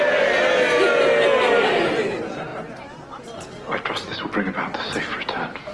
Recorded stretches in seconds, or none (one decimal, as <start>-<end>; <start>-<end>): 0.0-5.7